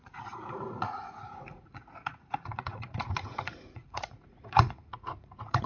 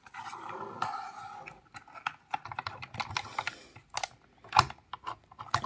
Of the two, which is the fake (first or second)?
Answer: first